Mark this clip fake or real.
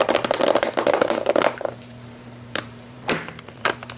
fake